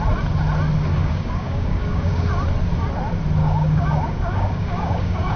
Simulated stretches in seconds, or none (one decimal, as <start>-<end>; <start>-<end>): 0.9-2.2; 3.4-5.4